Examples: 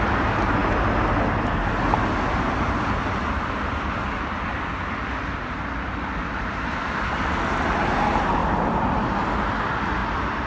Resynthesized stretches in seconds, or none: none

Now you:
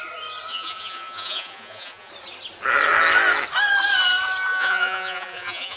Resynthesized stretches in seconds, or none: 0.5-2.1; 4.5-5.8

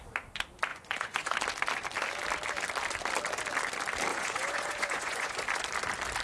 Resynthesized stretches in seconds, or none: 0.7-1.3; 4.1-5.4